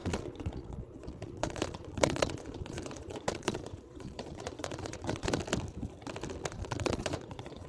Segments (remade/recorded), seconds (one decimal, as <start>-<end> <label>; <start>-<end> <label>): 0.0-5.4 remade; 5.4-6.5 recorded; 6.5-7.7 remade